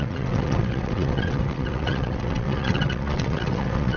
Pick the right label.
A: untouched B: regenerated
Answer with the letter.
B